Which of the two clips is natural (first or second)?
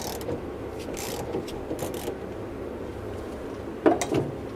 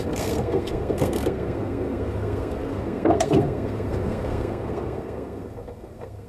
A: first